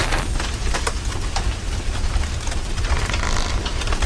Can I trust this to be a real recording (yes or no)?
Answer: yes